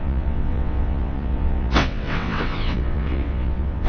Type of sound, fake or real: fake